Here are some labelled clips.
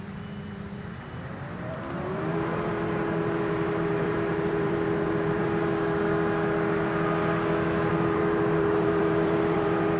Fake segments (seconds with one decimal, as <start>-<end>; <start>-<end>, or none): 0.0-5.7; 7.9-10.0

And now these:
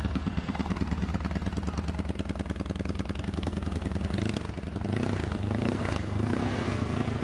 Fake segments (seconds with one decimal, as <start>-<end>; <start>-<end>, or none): 0.0-1.1; 3.2-4.2; 5.2-7.2

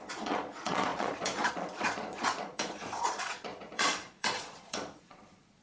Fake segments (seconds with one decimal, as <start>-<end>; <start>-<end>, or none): 0.0-5.6

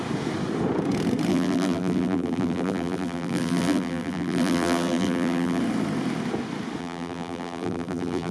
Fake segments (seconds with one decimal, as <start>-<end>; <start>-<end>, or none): 1.3-5.6; 6.8-8.3

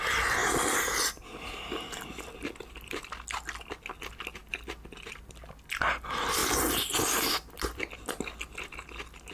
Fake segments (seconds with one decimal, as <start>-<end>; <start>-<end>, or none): none

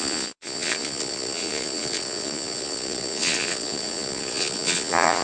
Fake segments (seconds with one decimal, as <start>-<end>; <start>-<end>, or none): 0.0-5.2

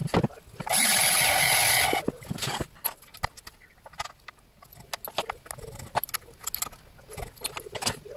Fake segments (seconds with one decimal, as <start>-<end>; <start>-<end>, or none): none

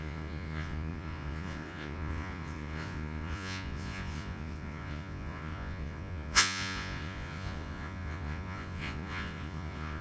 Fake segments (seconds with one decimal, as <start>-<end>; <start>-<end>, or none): 0.0-10.0